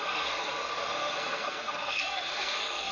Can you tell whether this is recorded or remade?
remade